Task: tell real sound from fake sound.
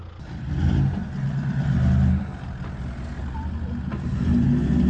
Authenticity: real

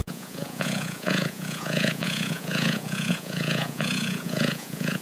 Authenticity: fake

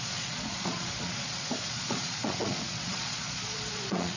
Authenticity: fake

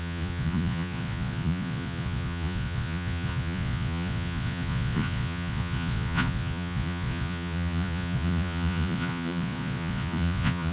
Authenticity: fake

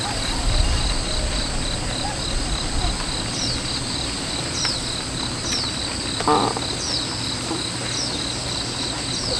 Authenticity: real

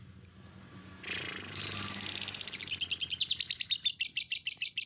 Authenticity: real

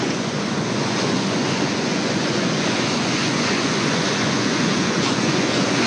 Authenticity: fake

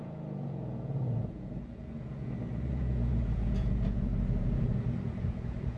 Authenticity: fake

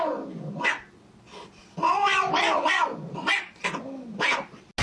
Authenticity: real